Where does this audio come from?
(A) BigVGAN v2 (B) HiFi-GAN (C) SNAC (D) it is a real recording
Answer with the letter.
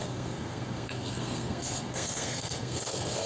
C